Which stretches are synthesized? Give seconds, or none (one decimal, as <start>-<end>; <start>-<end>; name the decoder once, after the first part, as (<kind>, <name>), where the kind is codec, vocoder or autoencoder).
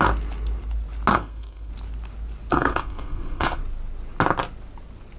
1.1-1.7 (codec, SNAC); 2.5-3.6